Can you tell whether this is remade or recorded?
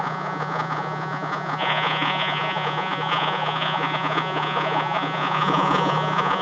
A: remade